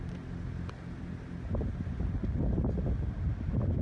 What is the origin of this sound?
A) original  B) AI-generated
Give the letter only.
A